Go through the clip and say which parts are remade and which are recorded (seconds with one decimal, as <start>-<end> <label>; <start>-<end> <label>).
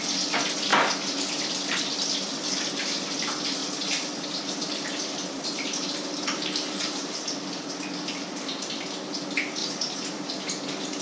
0.0-0.7 recorded; 0.7-1.8 remade; 1.8-3.6 recorded; 3.6-7.1 remade; 7.1-9.6 recorded; 9.6-10.3 remade; 10.3-11.0 recorded